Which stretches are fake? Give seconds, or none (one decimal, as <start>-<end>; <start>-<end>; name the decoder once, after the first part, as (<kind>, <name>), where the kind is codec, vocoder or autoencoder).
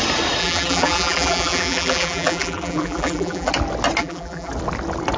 0.4-3.5 (vocoder, BigVGAN v2); 4.0-4.5